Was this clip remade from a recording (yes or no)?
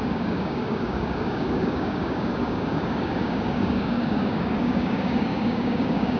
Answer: yes